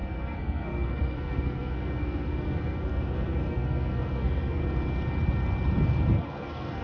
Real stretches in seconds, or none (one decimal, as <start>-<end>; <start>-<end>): 4.6-6.1